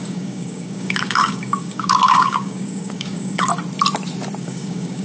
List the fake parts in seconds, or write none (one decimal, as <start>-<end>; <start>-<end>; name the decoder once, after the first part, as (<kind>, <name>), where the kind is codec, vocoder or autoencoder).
0.0-3.5 (codec, DAC); 4.4-5.0